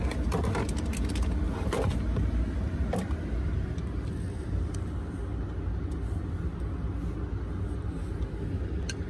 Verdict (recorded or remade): recorded